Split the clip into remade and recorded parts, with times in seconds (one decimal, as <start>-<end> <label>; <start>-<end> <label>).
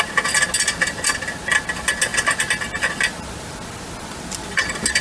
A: 0.0-5.0 recorded